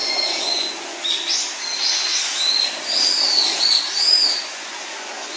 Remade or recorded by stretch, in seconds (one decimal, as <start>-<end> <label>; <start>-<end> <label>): 0.0-1.0 remade; 1.0-4.4 recorded; 4.4-5.4 remade